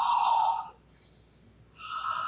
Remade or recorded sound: recorded